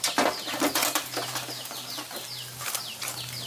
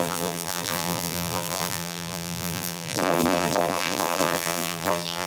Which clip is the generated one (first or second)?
second